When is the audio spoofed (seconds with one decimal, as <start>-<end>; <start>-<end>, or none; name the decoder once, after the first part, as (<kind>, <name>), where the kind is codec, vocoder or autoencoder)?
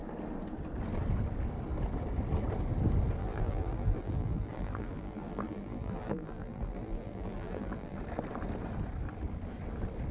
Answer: 3.2-8.0 (vocoder, BigVGAN v2)